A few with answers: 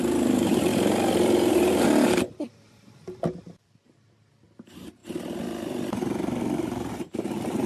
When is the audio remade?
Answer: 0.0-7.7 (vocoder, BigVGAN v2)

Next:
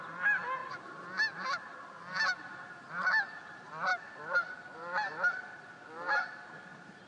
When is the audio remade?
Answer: none

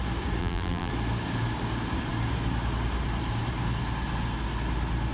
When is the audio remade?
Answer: 0.4-0.9 (vocoder, BigVGAN v2)

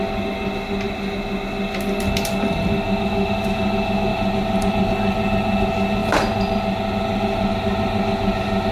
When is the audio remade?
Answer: none

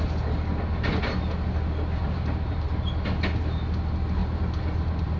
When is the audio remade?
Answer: 2.0-2.7 (vocoder, BigVGAN v2)

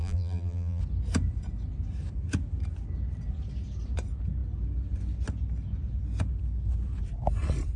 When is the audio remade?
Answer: 0.0-0.8 (vocoder, BigVGAN v2)